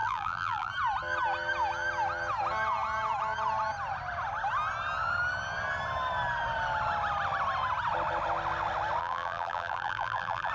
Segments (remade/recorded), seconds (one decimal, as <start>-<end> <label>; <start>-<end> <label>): 0.0-0.7 remade; 0.7-9.0 recorded; 9.0-10.5 remade